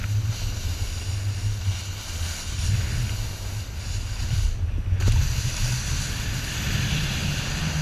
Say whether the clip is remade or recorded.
recorded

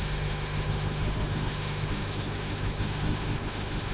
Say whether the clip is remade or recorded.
remade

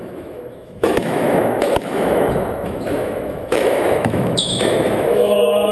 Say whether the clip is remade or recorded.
remade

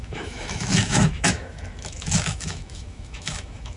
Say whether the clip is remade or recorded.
remade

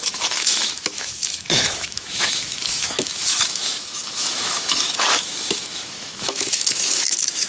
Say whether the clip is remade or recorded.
remade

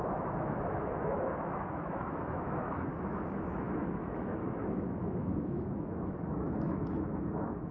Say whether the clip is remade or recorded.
remade